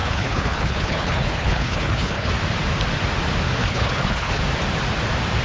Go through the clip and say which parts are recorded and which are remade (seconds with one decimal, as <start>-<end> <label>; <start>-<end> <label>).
0.0-2.3 remade; 2.3-3.6 recorded; 3.6-4.4 remade; 4.4-5.4 recorded